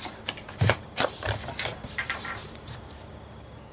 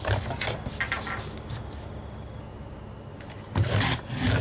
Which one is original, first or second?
second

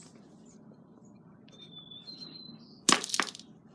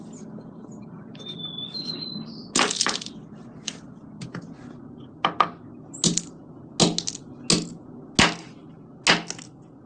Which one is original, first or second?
second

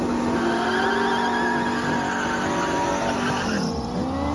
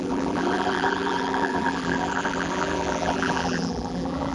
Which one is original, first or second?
first